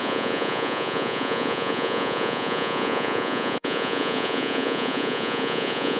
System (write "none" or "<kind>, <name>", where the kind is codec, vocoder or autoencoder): vocoder, Vocos